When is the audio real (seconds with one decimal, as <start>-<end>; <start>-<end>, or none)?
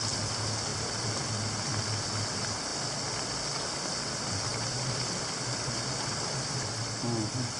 0.0-7.6